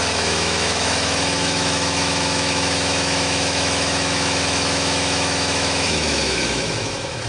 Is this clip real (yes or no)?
no